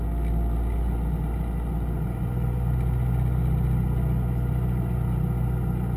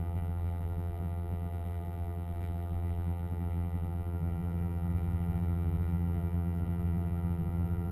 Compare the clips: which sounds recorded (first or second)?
first